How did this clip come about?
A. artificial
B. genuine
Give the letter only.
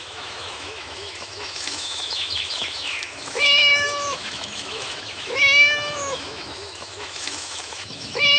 A